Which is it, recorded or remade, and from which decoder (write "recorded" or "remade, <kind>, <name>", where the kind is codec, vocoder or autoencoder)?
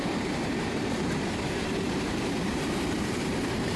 remade, vocoder, BigVGAN v2